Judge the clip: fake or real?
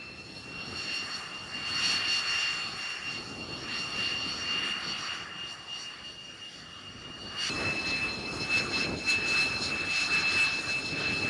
real